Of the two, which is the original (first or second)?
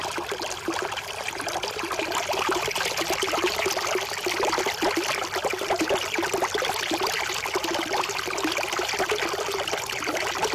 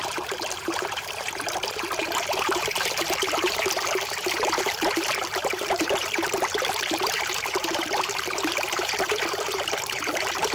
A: first